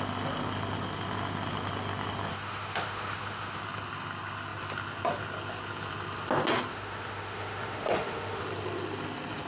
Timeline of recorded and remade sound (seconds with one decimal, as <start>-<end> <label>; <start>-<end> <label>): 0.0-2.3 recorded; 2.3-3.6 remade; 3.6-6.7 recorded; 6.7-8.4 remade; 8.4-9.5 recorded